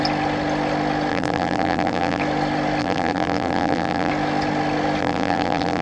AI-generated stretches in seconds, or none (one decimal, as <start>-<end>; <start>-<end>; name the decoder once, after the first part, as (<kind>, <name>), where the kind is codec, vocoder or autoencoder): 1.1-2.2 (vocoder, BigVGAN v2); 2.8-4.1; 5.0-5.8